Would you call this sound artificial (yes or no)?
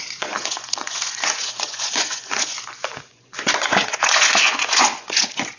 yes